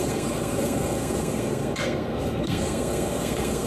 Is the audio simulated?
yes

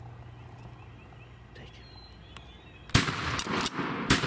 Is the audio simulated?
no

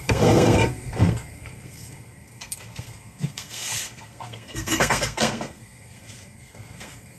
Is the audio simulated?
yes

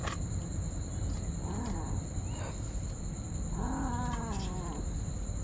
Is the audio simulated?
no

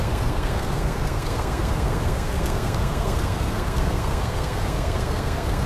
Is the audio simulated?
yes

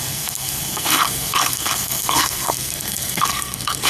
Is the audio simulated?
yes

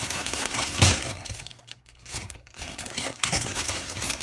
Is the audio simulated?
yes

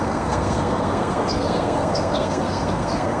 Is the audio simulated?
yes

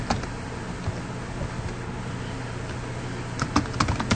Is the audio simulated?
no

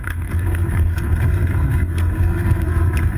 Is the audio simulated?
yes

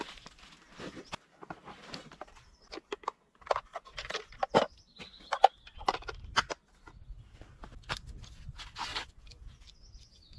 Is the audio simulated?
no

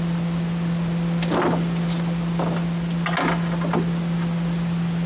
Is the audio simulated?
no